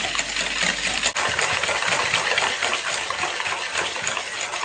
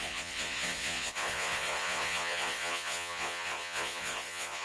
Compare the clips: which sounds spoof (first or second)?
second